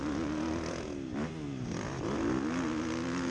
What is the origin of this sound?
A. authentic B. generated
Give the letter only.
A